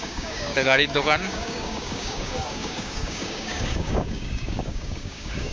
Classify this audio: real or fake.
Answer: fake